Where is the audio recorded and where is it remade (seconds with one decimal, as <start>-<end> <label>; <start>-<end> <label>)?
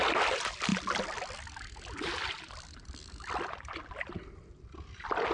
0.0-5.3 recorded